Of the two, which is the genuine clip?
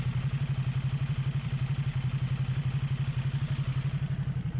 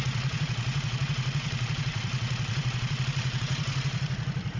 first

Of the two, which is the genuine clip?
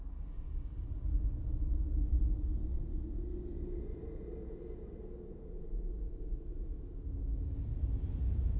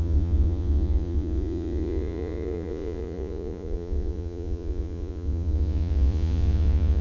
first